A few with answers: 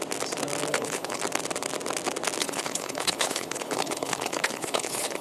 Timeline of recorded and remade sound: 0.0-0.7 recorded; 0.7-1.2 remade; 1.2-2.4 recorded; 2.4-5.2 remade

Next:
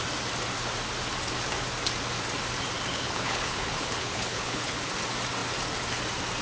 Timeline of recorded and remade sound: 0.0-2.9 recorded; 2.9-4.9 remade; 4.9-6.4 recorded

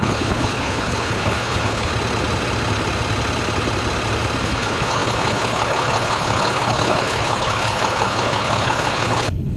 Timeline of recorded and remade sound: 0.0-1.9 remade; 1.9-4.4 recorded; 4.4-9.6 remade

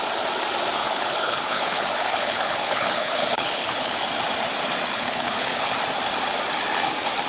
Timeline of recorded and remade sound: 0.0-0.8 recorded; 0.8-4.0 remade; 4.0-4.9 recorded; 4.9-5.7 remade; 5.7-7.3 recorded